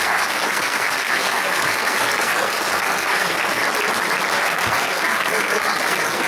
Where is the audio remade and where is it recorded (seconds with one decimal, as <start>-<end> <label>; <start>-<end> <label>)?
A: 0.0-3.6 remade; 3.6-4.4 recorded; 4.4-6.3 remade